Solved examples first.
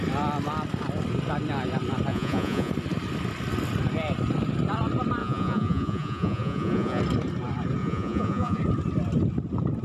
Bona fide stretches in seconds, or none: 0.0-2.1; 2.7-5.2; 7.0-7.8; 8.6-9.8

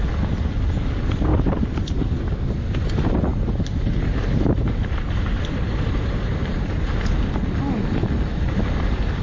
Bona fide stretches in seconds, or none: 0.0-1.3; 1.9-3.3; 7.3-8.3

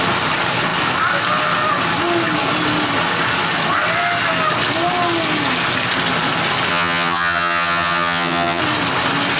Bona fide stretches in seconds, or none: 0.0-6.7; 8.6-9.4

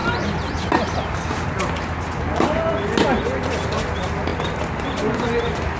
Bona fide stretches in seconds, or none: 0.0-5.8

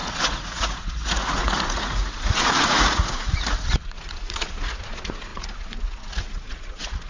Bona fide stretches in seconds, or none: none

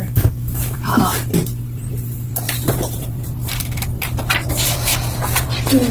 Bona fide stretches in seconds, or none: 1.1-4.5; 4.9-5.9

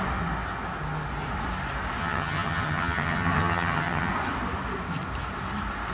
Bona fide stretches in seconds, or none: 0.0-2.0; 4.1-5.9

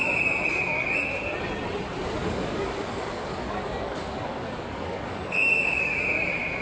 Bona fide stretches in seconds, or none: 0.0-2.2; 6.0-6.6